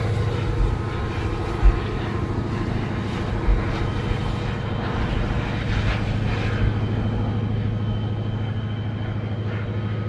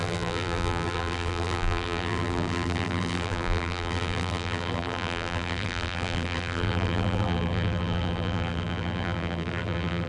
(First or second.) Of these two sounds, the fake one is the second